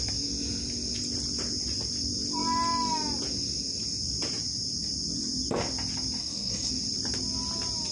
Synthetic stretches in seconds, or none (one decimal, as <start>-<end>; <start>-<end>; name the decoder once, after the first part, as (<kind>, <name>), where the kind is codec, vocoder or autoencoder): 6.2-6.7 (codec, SNAC)